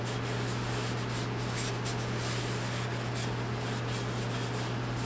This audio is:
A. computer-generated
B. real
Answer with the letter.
B